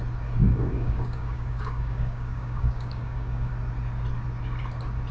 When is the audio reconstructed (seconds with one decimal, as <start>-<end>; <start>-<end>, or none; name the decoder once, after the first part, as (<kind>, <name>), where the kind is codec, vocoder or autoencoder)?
0.4-3.5 (codec, DAC)